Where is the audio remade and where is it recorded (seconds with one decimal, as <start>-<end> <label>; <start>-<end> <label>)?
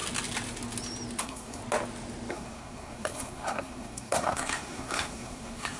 0.0-1.2 recorded; 1.2-1.6 remade; 1.6-2.3 recorded; 2.3-5.8 remade